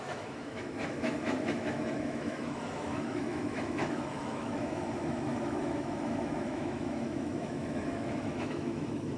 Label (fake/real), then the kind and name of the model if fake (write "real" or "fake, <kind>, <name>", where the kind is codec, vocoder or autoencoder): fake, autoencoder, DAC-VAE